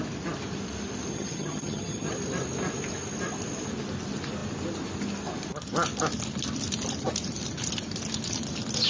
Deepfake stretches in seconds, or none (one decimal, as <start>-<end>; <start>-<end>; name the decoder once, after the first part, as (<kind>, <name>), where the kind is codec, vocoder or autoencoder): 1.1-2.1 (vocoder, HiFi-GAN)